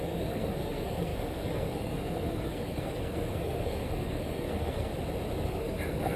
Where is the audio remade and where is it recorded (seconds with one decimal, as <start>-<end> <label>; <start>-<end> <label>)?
0.0-4.9 remade; 4.9-5.5 recorded; 5.5-6.2 remade

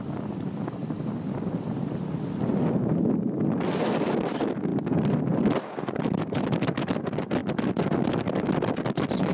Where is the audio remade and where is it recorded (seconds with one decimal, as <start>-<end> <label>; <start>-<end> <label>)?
0.0-9.3 recorded

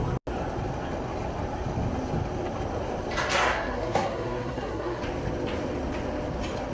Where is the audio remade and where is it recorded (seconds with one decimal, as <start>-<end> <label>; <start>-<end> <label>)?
0.0-3.3 recorded; 3.3-5.0 remade; 5.0-6.7 recorded